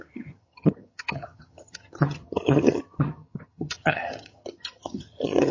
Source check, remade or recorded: remade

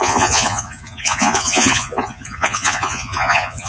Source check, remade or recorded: remade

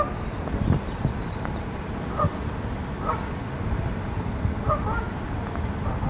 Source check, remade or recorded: recorded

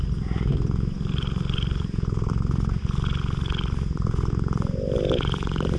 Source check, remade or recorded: recorded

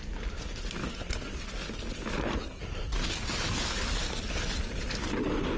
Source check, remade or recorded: recorded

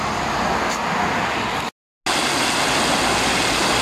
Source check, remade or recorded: recorded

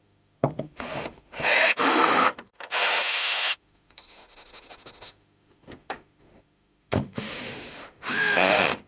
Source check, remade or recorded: remade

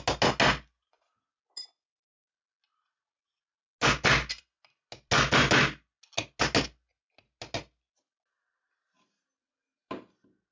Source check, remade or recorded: recorded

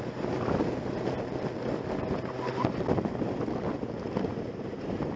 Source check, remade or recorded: recorded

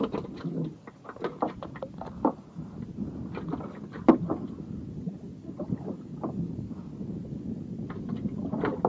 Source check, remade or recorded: recorded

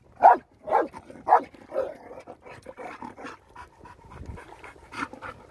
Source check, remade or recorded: recorded